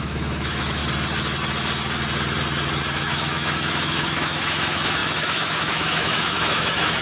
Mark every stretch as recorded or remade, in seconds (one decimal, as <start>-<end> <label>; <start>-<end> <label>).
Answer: 0.0-0.8 remade; 0.8-3.0 recorded; 3.0-7.0 remade

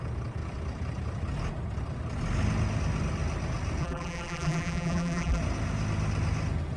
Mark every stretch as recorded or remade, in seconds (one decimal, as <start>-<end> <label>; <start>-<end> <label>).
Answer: 0.0-3.8 recorded; 3.8-5.4 remade; 5.4-6.8 recorded